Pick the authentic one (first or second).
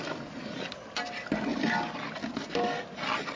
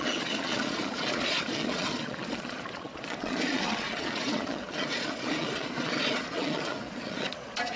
first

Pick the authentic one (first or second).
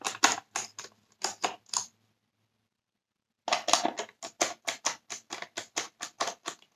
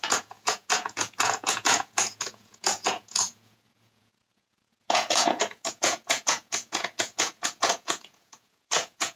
first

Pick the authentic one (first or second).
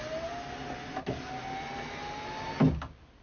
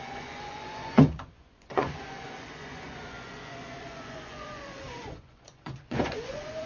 first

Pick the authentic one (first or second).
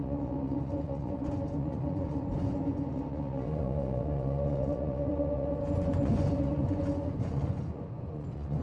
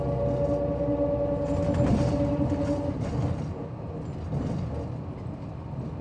second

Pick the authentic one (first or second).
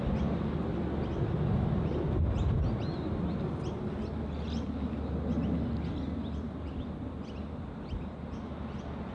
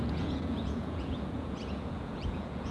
first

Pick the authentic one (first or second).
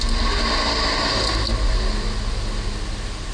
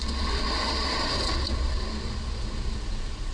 first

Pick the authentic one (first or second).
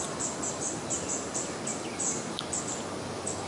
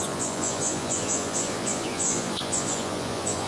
first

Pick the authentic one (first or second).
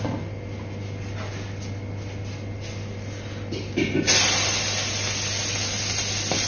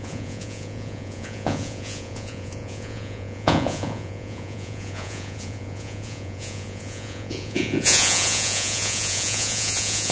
first